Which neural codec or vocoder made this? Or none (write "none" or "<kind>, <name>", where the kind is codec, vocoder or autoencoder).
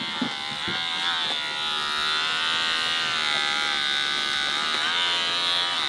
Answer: none